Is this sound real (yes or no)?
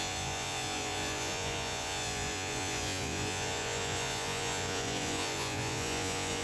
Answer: no